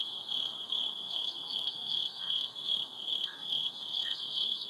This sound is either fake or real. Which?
fake